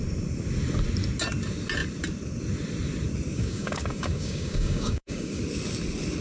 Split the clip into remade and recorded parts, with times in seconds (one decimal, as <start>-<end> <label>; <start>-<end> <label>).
0.0-3.3 recorded; 3.3-5.4 remade; 5.4-6.2 recorded